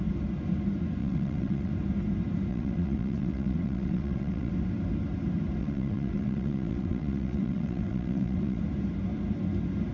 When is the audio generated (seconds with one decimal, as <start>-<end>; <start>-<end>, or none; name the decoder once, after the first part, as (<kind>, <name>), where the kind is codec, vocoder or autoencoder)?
1.0-1.7 (vocoder, WaveNeXt); 2.5-4.5; 5.6-8.6